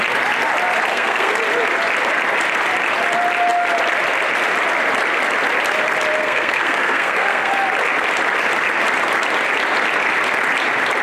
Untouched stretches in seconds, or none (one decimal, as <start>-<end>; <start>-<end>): 0.0-0.9; 1.4-6.2; 7.5-11.0